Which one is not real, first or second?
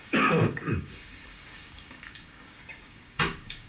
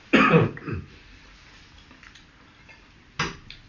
first